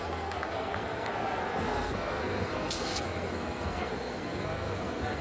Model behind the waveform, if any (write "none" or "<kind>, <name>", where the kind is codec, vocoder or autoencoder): codec, SNAC